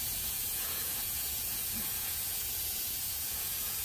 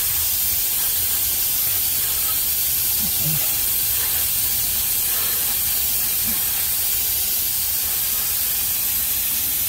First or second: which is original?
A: second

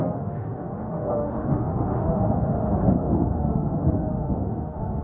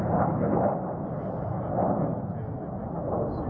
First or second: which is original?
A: second